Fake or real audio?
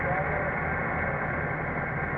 real